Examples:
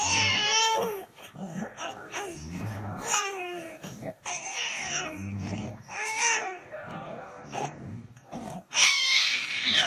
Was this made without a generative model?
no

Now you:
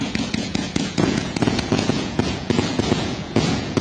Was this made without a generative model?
no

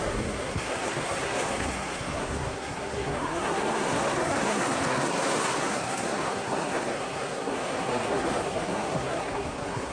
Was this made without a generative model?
no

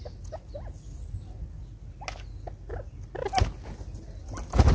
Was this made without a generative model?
yes